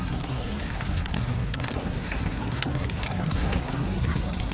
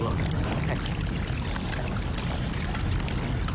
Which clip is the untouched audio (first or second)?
second